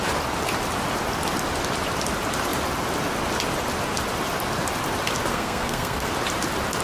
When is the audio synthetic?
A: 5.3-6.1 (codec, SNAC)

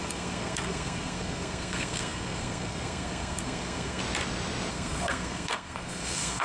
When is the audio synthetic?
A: 0.0-4.0 (codec, SNAC); 4.7-6.4